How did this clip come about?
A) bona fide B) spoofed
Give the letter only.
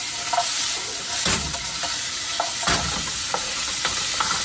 A